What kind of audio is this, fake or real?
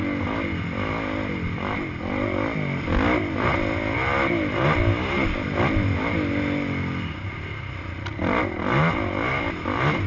real